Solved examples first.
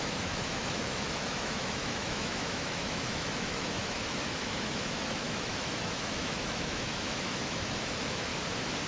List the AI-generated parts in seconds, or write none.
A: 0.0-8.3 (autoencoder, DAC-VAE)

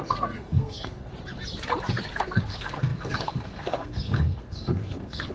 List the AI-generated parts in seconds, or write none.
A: 0.0-1.1 (codec, SNAC); 2.2-5.3